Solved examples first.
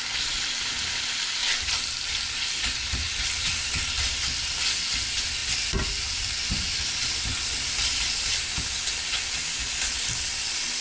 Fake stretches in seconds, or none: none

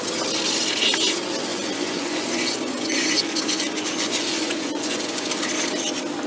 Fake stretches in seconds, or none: 1.5-5.3 (vocoder, Vocos)